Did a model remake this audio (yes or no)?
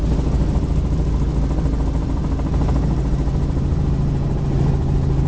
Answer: no